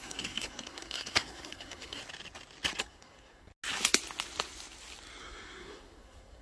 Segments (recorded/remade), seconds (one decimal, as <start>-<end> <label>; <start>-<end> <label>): 0.0-2.0 remade; 2.0-2.8 recorded; 2.8-3.5 remade; 3.5-5.2 recorded; 5.2-6.4 remade